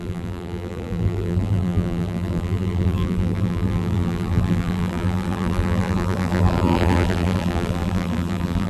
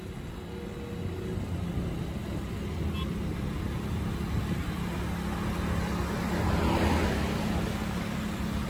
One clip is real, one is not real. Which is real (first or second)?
second